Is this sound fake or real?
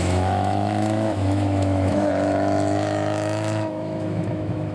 fake